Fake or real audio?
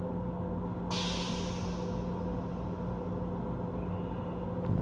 real